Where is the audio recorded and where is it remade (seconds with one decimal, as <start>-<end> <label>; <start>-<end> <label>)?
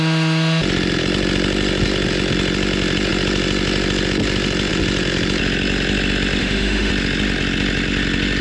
0.0-6.4 recorded; 6.4-6.9 remade; 6.9-8.4 recorded